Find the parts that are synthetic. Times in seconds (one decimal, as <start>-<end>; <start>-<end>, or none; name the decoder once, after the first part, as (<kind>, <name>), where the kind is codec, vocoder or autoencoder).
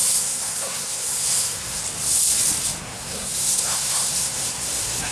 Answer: 0.0-1.8 (codec, SNAC); 2.8-5.1